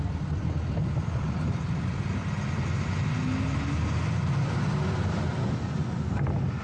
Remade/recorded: recorded